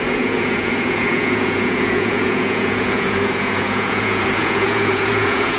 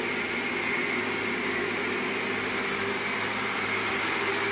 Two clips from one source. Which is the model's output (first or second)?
first